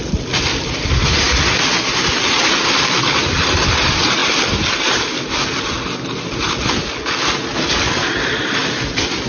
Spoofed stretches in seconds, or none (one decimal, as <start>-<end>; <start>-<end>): none